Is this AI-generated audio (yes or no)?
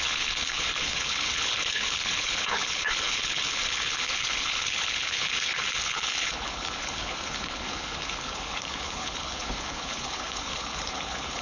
yes